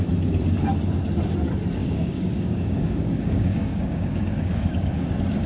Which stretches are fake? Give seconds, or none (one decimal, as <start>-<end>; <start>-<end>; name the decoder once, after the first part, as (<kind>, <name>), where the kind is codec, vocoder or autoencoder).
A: 1.8-5.1 (codec, DAC)